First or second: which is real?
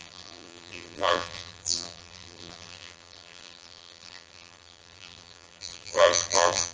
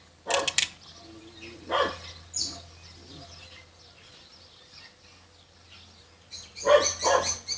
second